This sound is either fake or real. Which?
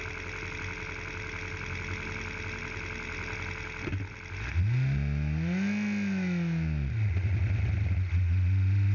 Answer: real